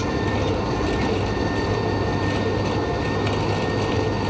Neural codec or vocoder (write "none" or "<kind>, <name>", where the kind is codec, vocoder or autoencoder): none